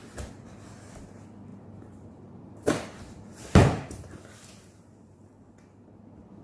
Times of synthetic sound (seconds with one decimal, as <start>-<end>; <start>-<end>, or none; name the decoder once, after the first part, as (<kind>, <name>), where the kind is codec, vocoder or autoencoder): 1.5-5.3 (vocoder, BigVGAN v2)

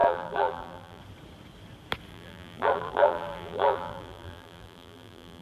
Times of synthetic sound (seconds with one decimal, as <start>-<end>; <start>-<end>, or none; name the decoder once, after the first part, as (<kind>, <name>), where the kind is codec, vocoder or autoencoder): 0.0-1.0 (vocoder, BigVGAN v2); 2.1-5.4